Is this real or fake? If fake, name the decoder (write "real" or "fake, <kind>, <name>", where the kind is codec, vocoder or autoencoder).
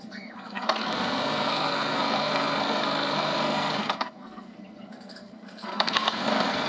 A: fake, codec, SNAC